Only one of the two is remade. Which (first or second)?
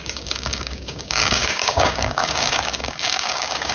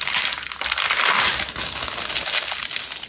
first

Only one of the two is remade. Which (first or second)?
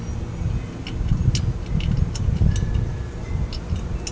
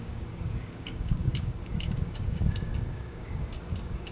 second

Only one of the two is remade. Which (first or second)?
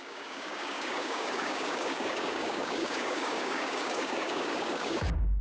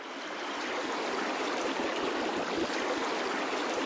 first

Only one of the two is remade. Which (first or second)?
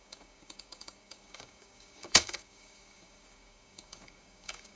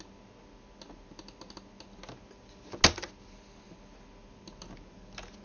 first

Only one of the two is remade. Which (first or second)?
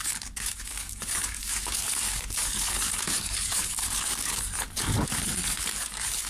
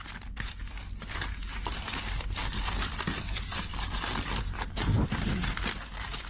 first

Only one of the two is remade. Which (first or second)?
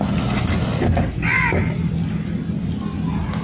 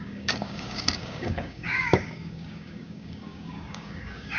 second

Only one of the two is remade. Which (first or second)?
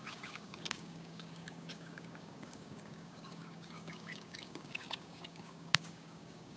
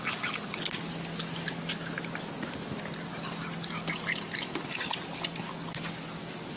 first